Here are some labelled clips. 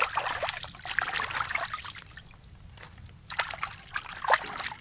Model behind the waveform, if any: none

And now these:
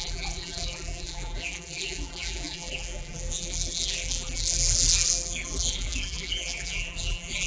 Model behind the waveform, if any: vocoder, BigVGAN v2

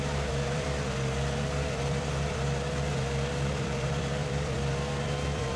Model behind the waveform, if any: vocoder, BigVGAN v2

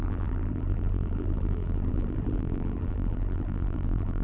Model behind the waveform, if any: vocoder, BigVGAN v2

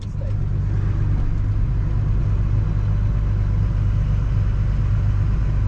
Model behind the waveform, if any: none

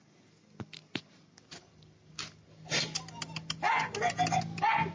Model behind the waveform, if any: none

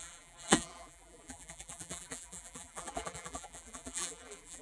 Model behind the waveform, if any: vocoder, BigVGAN v2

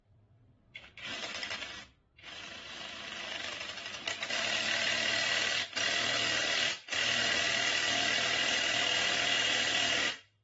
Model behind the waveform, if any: vocoder, BigVGAN v2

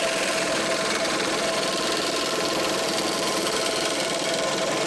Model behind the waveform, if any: vocoder, BigVGAN v2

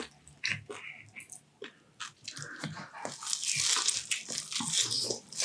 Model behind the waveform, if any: none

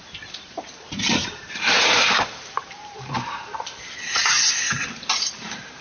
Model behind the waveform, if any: vocoder, BigVGAN v2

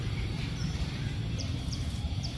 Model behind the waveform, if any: vocoder, BigVGAN v2